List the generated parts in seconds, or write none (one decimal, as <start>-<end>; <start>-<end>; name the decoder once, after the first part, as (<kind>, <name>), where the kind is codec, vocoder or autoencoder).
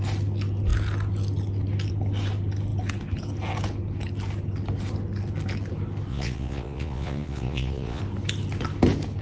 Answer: 6.1-8.0 (vocoder, Vocos)